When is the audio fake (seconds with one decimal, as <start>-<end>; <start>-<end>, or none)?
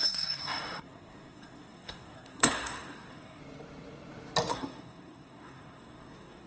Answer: 0.0-3.4; 4.5-6.5